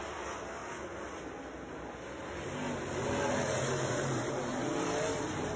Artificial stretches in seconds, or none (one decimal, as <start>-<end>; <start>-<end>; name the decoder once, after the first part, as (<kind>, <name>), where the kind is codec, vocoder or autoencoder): 0.6-1.1 (vocoder, BigVGAN v2); 2.2-5.6